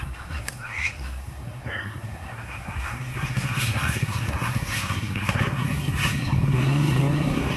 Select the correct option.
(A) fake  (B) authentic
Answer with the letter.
A